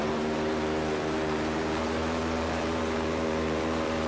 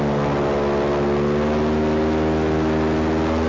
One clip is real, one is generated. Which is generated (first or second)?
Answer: first